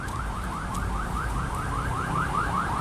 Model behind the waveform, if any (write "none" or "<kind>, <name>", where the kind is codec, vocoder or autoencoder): vocoder, BigVGAN v2